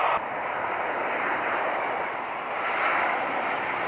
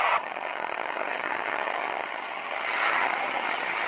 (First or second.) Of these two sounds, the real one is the first